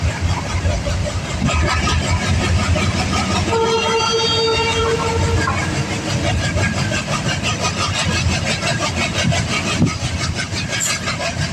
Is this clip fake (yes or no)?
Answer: no